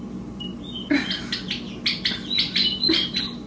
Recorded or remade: recorded